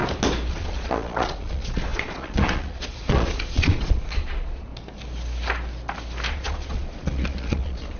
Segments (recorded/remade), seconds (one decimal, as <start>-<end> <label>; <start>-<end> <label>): 0.0-0.5 recorded; 0.5-4.7 remade; 4.7-6.3 recorded; 6.3-8.0 remade